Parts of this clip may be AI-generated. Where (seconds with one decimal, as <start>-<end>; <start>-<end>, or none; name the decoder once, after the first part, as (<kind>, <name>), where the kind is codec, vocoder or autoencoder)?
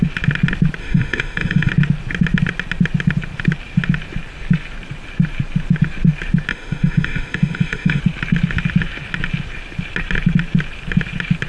0.8-1.7 (autoencoder, DAC-VAE); 6.5-8.0